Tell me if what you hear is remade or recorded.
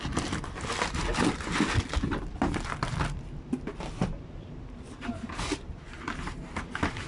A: recorded